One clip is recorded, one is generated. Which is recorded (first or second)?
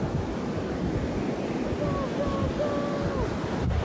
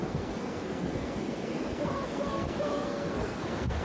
first